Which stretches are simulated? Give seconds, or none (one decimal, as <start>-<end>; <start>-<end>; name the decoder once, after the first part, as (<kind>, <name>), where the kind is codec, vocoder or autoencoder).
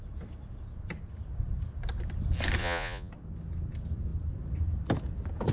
2.6-3.1 (vocoder, Vocos)